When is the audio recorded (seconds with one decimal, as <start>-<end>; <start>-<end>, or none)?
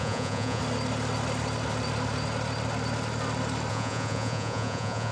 0.6-3.7